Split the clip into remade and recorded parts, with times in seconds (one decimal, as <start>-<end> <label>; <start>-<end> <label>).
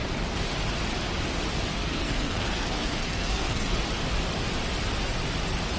0.0-1.7 recorded; 1.7-3.7 remade; 3.7-5.8 recorded